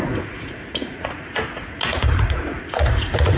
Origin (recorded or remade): remade